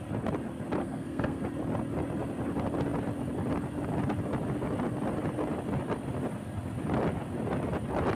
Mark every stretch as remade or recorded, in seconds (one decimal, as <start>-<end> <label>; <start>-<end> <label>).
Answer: 0.0-0.8 recorded; 0.8-1.4 remade; 1.4-8.2 recorded